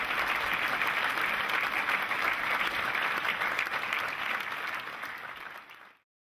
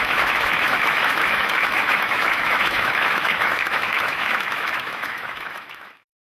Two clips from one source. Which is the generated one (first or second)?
second